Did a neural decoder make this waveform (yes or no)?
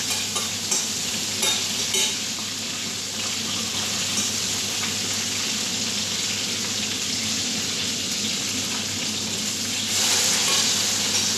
no